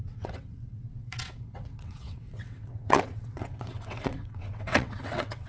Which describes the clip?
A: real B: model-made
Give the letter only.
B